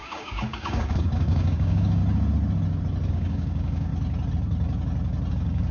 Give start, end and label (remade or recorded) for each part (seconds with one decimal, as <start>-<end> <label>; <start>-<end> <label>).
0.0-2.0 remade; 2.0-3.1 recorded; 3.1-3.9 remade; 3.9-5.3 recorded; 5.3-5.7 remade